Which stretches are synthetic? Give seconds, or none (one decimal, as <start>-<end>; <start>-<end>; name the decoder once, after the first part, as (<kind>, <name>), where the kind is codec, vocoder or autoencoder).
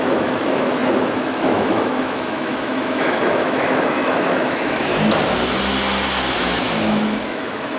0.0-4.9 (autoencoder, DAC-VAE); 6.3-7.8